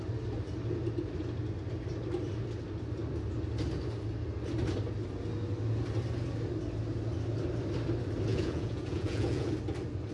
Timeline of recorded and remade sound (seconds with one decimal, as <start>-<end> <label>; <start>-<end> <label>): 0.0-8.3 recorded; 8.3-9.5 remade; 9.5-10.1 recorded